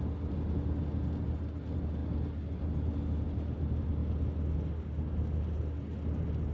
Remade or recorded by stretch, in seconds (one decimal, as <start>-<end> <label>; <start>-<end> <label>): 0.0-6.5 recorded